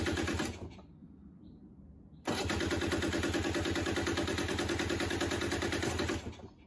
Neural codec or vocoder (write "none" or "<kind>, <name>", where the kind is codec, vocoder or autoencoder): none